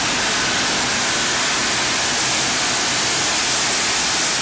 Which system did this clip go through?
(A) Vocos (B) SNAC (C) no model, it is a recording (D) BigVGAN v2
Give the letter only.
C